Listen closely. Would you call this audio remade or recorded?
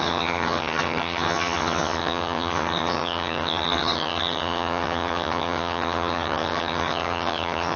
remade